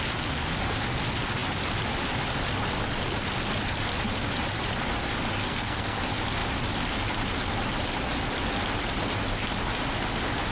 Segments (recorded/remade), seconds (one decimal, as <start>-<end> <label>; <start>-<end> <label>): 0.0-5.4 recorded; 5.4-6.0 remade; 6.0-10.5 recorded